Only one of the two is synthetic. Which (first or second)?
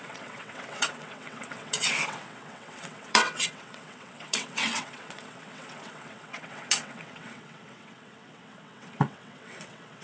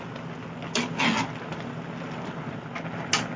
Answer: first